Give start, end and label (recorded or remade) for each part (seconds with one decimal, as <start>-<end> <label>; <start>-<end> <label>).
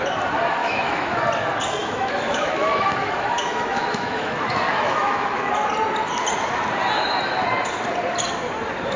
0.0-0.6 recorded; 0.6-1.2 remade; 1.2-1.8 recorded; 1.8-5.5 remade; 5.5-9.0 recorded